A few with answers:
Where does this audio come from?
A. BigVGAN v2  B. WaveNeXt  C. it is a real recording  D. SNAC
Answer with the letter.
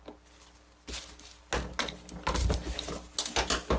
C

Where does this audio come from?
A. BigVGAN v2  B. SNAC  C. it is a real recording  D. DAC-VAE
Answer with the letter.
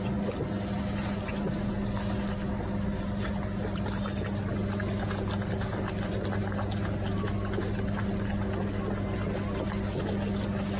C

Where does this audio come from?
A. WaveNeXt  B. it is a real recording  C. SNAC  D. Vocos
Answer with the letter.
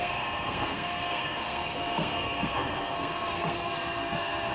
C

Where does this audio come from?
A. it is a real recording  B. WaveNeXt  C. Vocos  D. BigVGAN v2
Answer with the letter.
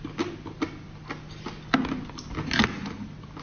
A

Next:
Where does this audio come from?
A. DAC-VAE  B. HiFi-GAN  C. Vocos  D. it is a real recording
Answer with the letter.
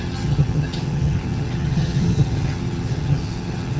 B